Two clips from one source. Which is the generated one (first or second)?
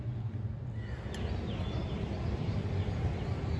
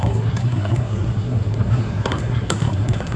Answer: second